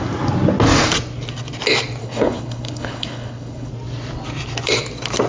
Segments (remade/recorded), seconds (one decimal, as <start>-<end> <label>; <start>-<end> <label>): 0.0-2.0 recorded; 2.0-3.7 remade; 3.7-5.3 recorded